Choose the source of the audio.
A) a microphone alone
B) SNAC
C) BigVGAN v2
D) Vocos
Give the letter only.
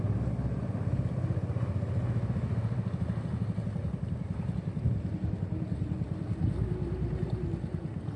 A